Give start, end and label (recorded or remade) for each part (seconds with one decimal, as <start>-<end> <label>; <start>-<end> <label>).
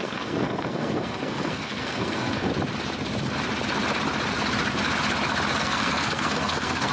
0.0-2.5 remade; 2.5-5.6 recorded; 5.6-6.9 remade